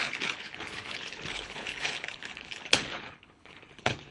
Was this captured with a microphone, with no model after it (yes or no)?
no